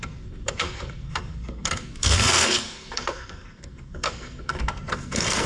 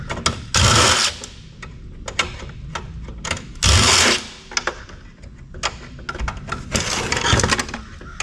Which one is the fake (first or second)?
first